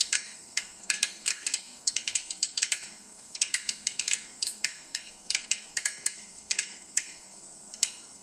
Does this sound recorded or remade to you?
remade